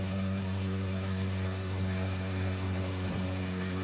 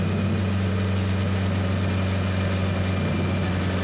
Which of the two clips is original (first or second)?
second